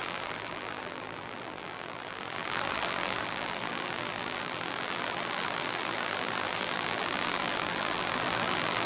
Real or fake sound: fake